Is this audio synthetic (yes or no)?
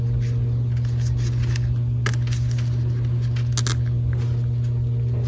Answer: no